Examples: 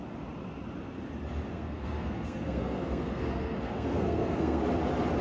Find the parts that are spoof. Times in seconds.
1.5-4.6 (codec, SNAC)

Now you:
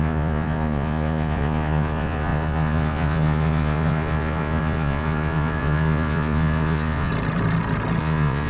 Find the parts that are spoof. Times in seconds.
0.0-7.1 (vocoder, Vocos); 8.0-8.5

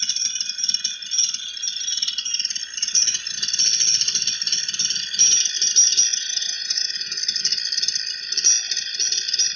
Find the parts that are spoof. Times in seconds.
6.1-7.2 (vocoder, Vocos)